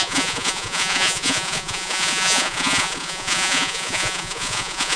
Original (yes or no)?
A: no